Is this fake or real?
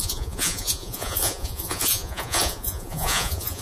fake